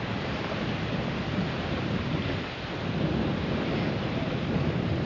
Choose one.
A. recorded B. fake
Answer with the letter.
A